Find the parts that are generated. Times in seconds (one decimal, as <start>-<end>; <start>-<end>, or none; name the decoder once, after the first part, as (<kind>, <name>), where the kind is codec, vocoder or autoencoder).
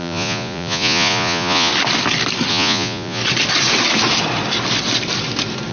0.0-1.7 (vocoder, Vocos); 2.5-3.2